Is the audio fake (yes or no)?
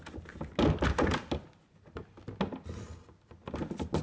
no